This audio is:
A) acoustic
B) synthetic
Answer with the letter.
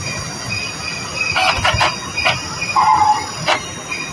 A